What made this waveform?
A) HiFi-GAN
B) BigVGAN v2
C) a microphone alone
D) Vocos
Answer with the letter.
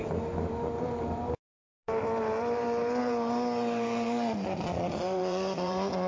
B